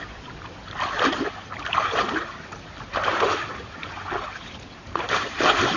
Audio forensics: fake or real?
real